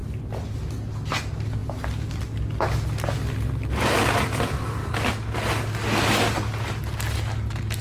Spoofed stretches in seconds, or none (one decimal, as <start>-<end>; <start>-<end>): none